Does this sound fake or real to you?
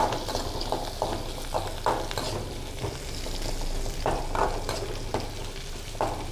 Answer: real